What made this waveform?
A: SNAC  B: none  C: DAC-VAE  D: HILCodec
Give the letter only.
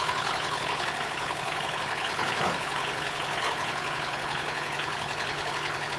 D